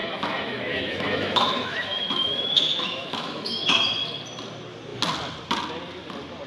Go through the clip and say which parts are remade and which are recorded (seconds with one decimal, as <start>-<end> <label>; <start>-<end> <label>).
0.0-3.9 remade; 3.9-6.5 recorded